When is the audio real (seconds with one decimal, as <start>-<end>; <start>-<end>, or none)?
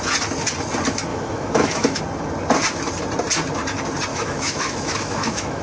0.0-1.1; 2.0-4.1